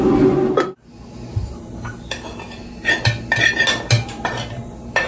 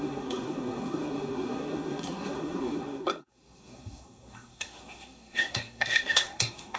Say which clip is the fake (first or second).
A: second